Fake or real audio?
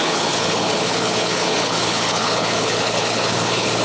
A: fake